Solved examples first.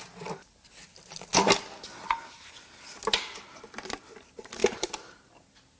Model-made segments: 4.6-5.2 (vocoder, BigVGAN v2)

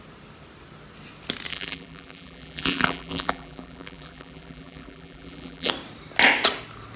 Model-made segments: 1.5-5.7 (vocoder, BigVGAN v2)

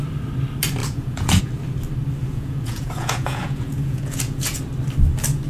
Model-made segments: 0.8-1.4 (vocoder, Vocos); 2.2-4.6

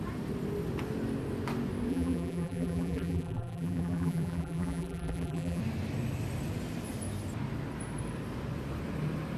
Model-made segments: 1.9-5.6 (vocoder, BigVGAN v2)

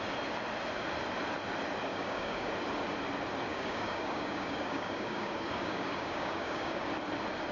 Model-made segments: 1.9-2.5 (codec, DAC); 3.5-6.9

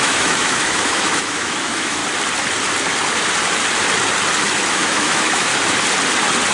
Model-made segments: 0.0-2.0 (autoencoder, DAC-VAE); 4.7-5.5

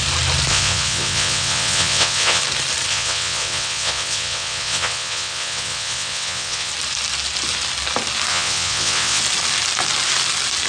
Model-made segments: 0.5-2.4 (vocoder, WaveNeXt); 2.9-6.7; 8.3-9.2